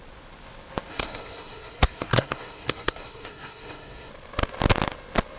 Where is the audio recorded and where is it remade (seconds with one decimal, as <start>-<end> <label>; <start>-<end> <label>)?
0.0-0.9 recorded; 0.9-4.1 remade; 4.1-5.4 recorded